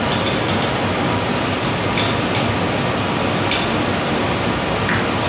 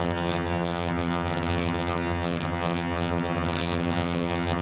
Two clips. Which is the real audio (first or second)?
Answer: first